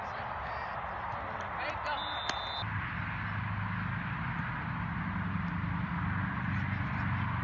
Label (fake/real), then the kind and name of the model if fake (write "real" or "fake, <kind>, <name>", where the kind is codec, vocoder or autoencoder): real